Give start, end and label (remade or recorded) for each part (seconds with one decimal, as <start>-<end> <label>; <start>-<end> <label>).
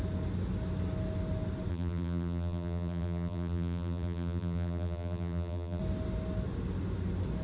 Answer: 0.0-1.7 recorded; 1.7-5.8 remade; 5.8-7.4 recorded